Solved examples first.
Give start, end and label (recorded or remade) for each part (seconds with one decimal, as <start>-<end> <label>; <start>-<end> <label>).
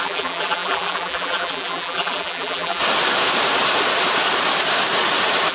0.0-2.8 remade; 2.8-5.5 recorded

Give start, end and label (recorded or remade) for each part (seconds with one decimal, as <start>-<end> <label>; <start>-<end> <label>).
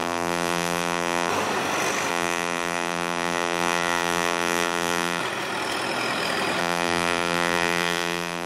0.0-1.3 remade; 1.3-2.1 recorded; 2.1-5.2 remade; 5.2-6.6 recorded; 6.6-8.5 remade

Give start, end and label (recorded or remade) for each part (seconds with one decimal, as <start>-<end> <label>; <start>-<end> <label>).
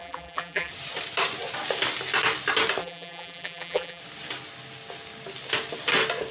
0.0-0.7 remade; 0.7-2.8 recorded; 2.8-4.0 remade; 4.0-6.3 recorded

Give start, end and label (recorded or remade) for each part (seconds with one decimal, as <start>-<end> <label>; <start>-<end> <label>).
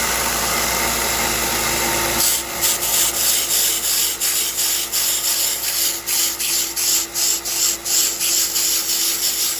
0.0-2.3 recorded; 2.3-2.9 remade; 2.9-9.6 recorded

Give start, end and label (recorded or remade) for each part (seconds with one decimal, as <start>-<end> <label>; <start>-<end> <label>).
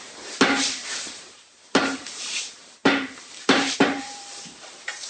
0.0-5.1 remade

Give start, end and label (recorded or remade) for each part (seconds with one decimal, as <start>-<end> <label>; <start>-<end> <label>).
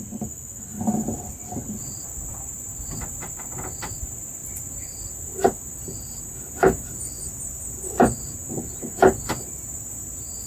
0.0-0.7 recorded; 0.7-1.5 remade; 1.5-2.3 recorded; 2.3-3.4 remade; 3.4-10.5 recorded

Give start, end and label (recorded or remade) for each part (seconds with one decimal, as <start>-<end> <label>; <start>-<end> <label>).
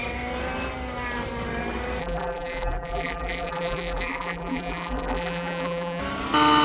0.0-2.0 recorded; 2.0-6.0 remade; 6.0-6.6 recorded